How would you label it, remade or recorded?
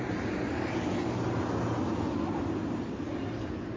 recorded